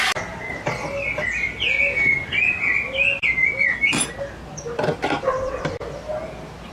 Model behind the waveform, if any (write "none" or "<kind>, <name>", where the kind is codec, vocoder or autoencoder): none